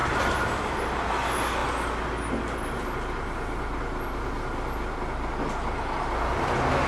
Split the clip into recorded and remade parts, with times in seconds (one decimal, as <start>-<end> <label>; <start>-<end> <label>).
0.0-6.9 recorded